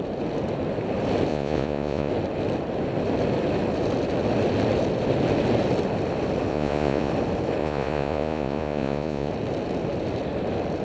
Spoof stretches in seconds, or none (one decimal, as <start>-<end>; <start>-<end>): 1.3-2.1; 6.5-7.1; 7.6-9.3